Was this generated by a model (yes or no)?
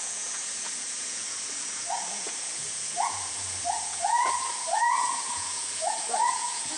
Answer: yes